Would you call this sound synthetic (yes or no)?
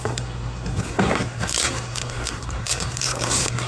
yes